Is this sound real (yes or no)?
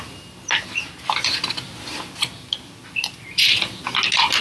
yes